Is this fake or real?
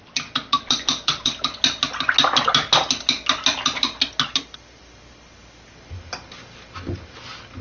real